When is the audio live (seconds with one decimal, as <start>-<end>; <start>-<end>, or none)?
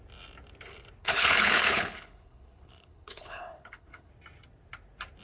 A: 0.0-1.0; 4.1-5.2